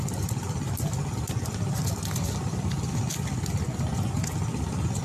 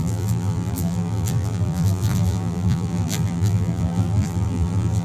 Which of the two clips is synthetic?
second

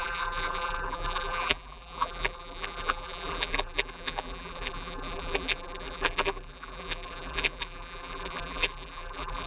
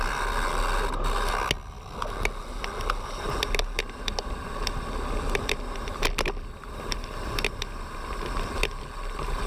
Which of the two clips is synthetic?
first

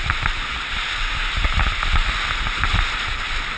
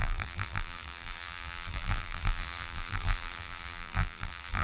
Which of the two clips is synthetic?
second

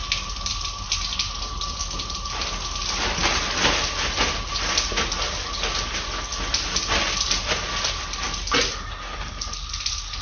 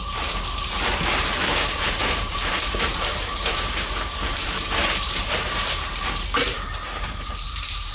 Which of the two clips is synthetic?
second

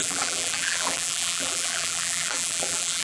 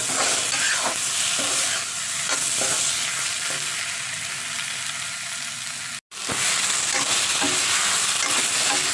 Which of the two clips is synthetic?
first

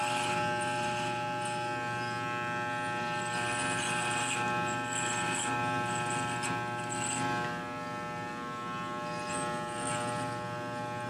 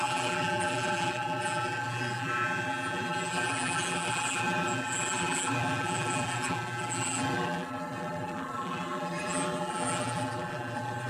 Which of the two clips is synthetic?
second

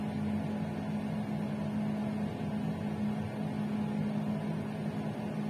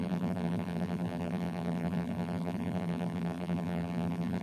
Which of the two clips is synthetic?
second